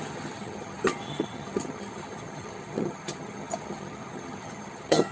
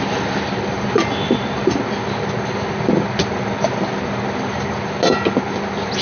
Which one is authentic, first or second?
second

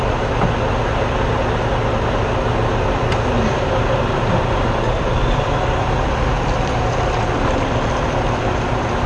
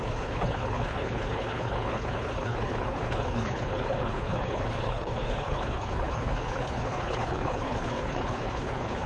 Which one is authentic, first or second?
first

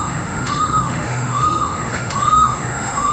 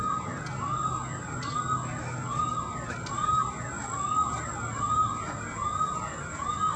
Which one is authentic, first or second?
second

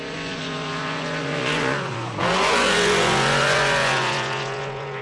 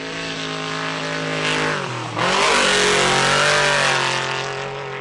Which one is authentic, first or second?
second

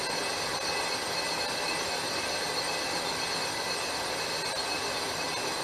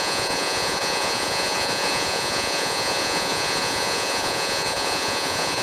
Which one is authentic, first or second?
first